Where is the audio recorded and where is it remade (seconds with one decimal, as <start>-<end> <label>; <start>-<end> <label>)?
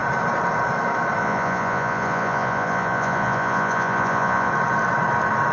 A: 0.0-1.2 recorded; 1.2-4.5 remade; 4.5-5.5 recorded